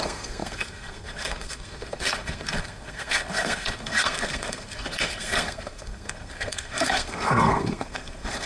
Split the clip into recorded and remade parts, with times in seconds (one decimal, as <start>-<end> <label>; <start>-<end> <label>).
0.0-8.5 remade